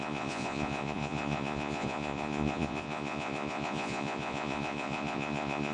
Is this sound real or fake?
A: fake